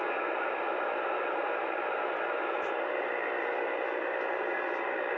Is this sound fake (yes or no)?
no